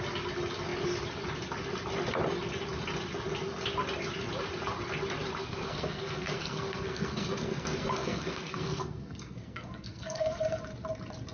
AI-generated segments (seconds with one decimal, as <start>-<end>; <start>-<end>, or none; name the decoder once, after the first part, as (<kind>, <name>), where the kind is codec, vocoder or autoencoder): 5.4-10.6 (codec, SNAC)